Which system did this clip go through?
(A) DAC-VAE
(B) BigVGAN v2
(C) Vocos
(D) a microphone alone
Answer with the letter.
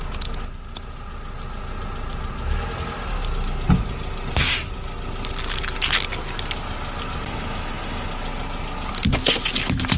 D